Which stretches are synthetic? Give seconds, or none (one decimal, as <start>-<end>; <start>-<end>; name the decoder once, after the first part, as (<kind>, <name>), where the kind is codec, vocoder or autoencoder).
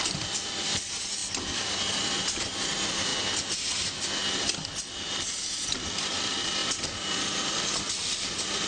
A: 0.0-3.1 (vocoder, BigVGAN v2); 5.4-8.7